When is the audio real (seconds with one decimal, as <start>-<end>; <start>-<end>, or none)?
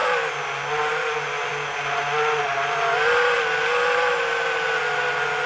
0.0-5.5